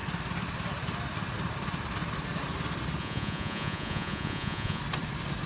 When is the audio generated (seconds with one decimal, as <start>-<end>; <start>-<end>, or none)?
3.0-4.8